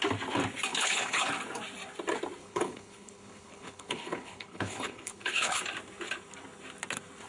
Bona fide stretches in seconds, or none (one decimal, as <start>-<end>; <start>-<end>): 0.0-0.7; 1.3-2.4; 5.6-7.3